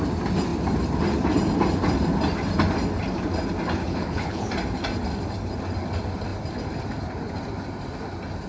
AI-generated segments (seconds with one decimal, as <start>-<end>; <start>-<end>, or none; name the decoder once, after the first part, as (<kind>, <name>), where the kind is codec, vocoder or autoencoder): 3.8-4.5 (codec, HILCodec)